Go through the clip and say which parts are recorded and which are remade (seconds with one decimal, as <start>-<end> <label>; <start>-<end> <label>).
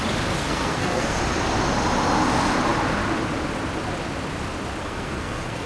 0.0-0.4 recorded; 0.4-1.2 remade; 1.2-4.8 recorded; 4.8-5.7 remade